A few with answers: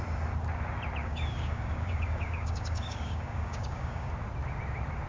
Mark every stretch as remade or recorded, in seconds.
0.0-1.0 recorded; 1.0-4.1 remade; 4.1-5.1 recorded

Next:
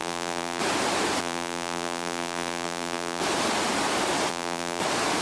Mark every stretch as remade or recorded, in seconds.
0.0-0.6 remade; 0.6-1.2 recorded; 1.2-3.2 remade; 3.2-4.3 recorded; 4.3-4.8 remade; 4.8-5.2 recorded

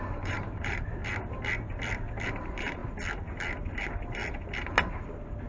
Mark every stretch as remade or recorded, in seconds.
0.0-1.0 remade; 1.0-2.3 recorded; 2.3-2.8 remade; 2.8-3.8 recorded; 3.8-4.2 remade; 4.2-5.5 recorded